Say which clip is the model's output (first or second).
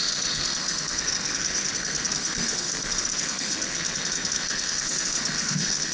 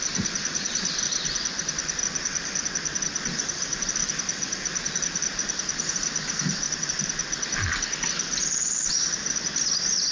first